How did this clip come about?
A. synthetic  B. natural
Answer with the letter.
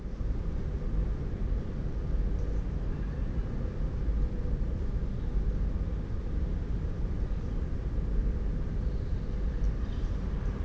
B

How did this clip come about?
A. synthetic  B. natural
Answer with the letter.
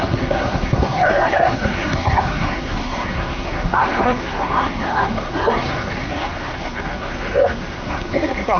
A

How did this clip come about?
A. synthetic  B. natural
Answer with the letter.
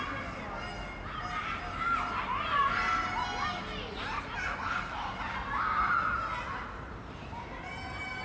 B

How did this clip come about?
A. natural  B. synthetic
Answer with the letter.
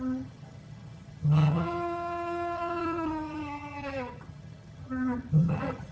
B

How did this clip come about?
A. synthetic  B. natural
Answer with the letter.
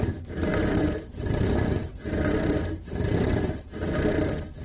A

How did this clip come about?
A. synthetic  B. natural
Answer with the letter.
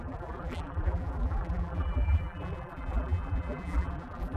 A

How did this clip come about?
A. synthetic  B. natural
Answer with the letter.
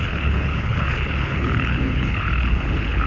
A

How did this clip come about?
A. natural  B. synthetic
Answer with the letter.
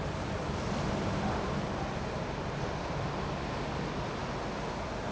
A